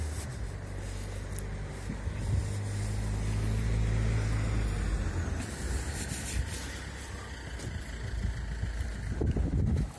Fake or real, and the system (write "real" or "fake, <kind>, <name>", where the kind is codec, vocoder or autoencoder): real